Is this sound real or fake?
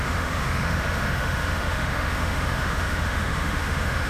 fake